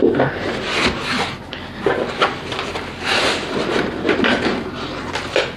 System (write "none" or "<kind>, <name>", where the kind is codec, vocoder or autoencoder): none